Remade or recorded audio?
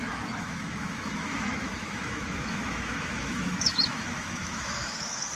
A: remade